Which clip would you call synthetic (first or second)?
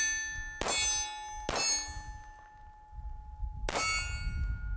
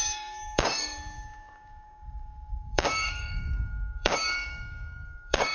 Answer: second